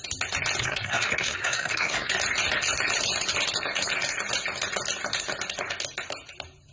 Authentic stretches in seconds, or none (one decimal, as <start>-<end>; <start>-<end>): 0.0-0.6; 2.1-6.7